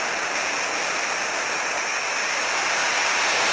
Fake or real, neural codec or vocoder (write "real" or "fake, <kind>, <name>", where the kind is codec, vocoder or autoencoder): real